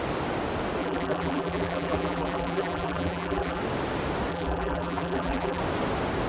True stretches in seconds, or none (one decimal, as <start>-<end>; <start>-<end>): 0.0-0.8; 3.6-4.3; 5.6-6.3

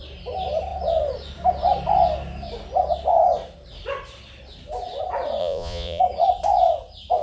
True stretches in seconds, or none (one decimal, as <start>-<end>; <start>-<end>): 0.0-5.4; 6.0-7.2

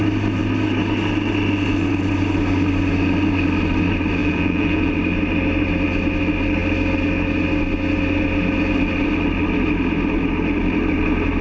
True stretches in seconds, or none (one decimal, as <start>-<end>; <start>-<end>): 0.0-4.2; 4.9-11.4

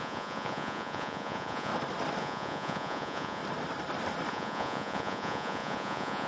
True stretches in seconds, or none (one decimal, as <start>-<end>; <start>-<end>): 1.7-2.2; 3.4-4.3

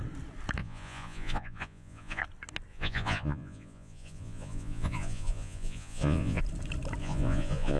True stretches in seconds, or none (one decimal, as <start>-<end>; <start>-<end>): 0.0-0.6; 2.2-2.7; 6.4-7.0

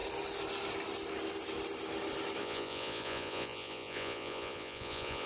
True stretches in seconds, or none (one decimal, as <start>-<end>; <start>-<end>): 0.0-2.4

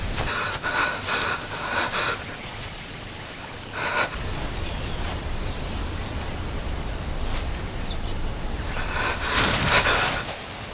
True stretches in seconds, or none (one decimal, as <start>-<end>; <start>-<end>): 0.0-2.4; 3.1-10.7

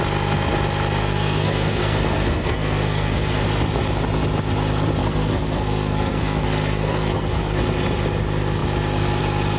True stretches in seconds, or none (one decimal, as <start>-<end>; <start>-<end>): 0.0-1.0; 3.4-5.0; 7.6-9.6